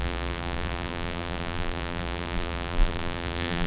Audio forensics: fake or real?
fake